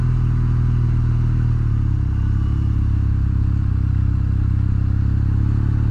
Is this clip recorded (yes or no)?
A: yes